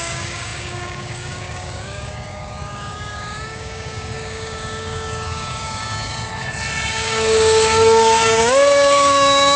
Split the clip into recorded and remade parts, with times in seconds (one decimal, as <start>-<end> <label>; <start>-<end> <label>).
0.0-6.1 remade; 6.1-6.9 recorded; 6.9-9.6 remade